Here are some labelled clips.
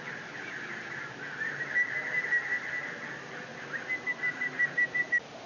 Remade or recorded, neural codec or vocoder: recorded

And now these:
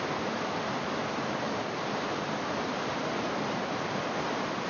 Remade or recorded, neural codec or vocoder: recorded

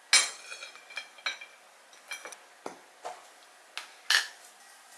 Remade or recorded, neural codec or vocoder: recorded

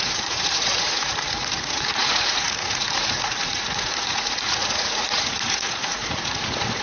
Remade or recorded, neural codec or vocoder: remade, vocoder, Vocos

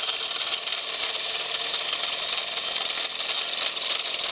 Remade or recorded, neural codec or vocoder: recorded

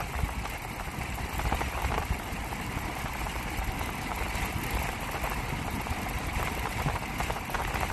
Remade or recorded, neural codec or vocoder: recorded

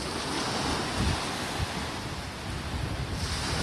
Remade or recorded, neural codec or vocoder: recorded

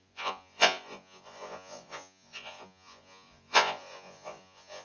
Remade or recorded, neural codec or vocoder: remade, vocoder, Vocos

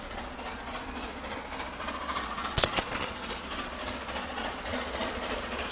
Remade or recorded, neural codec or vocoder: remade, vocoder, Vocos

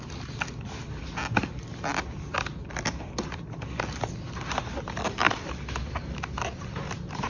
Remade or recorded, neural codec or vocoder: recorded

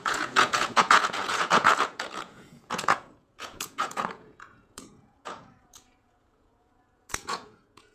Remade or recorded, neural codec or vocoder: remade, vocoder, Vocos